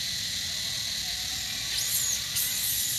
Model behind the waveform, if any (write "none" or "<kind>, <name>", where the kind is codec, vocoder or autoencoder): none